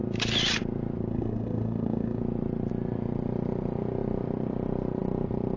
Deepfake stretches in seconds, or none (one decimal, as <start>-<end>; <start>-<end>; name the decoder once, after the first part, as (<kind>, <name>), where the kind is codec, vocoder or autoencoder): 1.1-2.2 (codec, SNAC)